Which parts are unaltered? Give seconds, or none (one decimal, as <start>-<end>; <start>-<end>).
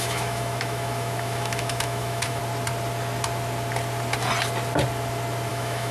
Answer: 2.4-5.5